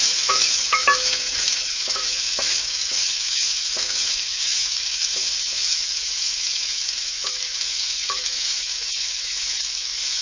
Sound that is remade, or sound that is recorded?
remade